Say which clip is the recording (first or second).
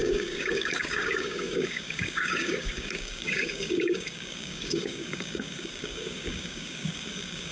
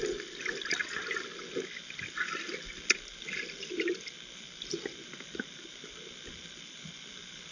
second